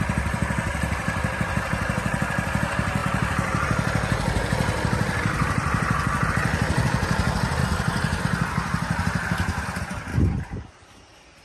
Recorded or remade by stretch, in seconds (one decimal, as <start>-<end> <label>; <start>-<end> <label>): 0.0-7.6 recorded; 7.6-8.2 remade; 8.2-10.1 recorded; 10.1-10.7 remade; 10.7-11.4 recorded